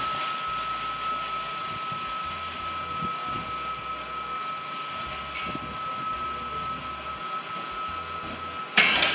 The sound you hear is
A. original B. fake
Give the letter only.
A